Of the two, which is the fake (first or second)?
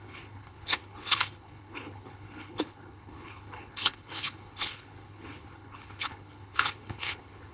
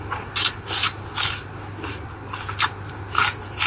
first